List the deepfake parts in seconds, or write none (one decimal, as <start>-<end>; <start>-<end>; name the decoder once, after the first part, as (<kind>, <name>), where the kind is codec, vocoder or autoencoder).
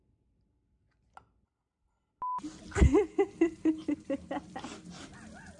none